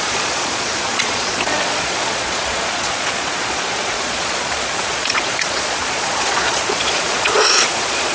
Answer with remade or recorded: remade